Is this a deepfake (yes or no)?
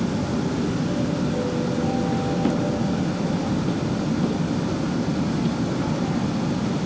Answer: no